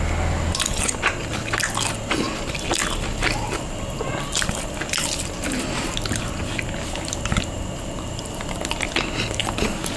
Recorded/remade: recorded